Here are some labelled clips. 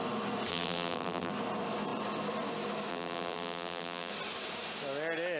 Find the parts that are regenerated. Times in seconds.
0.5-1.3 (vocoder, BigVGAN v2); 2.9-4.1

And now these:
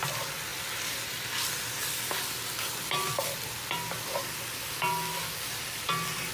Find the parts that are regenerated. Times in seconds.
none

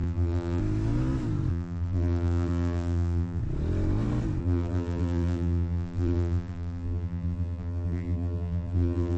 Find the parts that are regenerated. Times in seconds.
0.0-0.6 (vocoder, BigVGAN v2); 1.5-3.4; 4.4-9.2

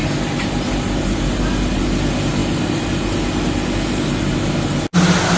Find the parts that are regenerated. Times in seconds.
none

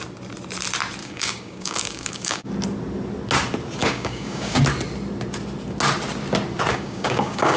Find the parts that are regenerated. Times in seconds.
1.0-2.5 (codec, DAC); 3.8-4.6; 6.7-7.6

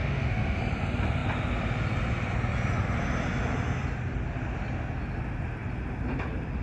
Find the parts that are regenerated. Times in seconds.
0.0-0.6 (autoencoder, DAC-VAE)